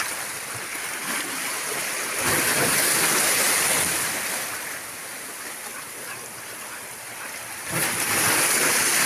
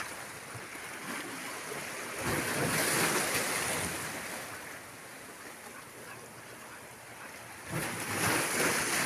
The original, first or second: second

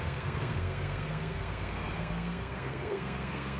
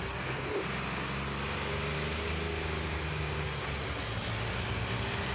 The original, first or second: second